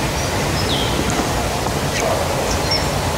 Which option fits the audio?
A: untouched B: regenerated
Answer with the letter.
A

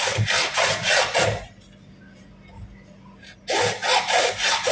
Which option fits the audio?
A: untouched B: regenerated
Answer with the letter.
A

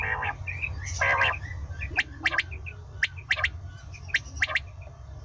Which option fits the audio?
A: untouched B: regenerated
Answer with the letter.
A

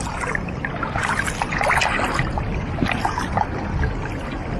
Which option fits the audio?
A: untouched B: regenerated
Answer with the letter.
A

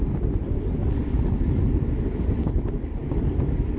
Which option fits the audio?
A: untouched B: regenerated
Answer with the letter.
A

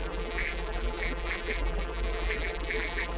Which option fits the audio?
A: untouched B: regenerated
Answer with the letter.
B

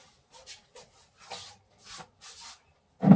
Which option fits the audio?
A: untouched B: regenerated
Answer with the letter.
A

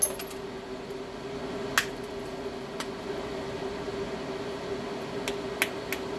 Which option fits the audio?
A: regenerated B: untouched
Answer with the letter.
B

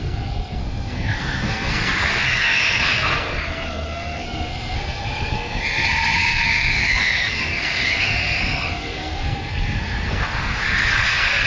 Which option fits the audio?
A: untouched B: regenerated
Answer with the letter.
B